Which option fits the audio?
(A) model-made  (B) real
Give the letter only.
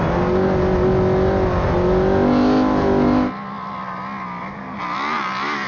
B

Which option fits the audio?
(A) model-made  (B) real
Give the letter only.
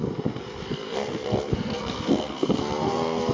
A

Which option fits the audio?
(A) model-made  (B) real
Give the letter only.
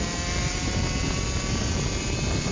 B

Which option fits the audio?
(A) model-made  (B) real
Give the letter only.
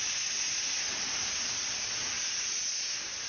B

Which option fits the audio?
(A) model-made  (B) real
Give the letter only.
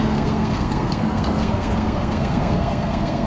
A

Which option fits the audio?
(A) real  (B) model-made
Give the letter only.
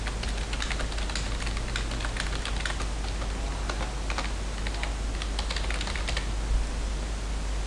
A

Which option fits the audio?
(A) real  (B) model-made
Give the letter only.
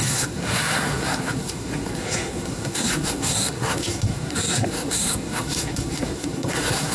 B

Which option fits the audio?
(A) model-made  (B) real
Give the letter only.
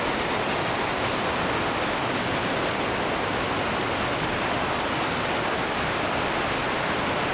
B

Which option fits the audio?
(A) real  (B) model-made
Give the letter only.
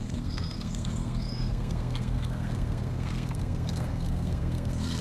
B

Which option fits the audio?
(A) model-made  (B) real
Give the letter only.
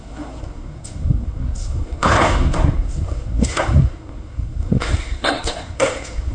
A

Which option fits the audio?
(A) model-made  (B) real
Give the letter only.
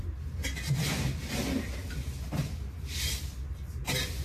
B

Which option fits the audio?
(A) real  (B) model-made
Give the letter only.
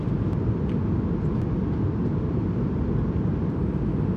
A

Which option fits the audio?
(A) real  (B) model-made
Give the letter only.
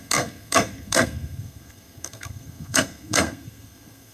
B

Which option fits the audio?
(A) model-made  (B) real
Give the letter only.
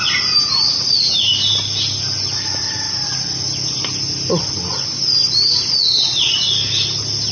B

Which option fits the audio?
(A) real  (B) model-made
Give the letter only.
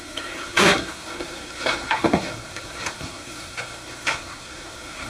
B